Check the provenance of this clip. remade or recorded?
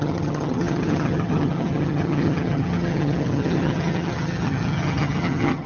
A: remade